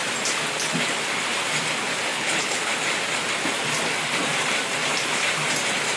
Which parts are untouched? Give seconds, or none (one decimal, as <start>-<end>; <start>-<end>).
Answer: 0.0-2.1; 2.7-6.0